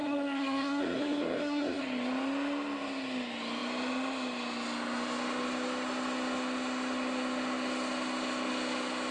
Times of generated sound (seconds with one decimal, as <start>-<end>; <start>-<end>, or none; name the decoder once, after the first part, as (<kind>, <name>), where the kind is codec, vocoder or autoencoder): 0.0-1.8 (codec, SNAC)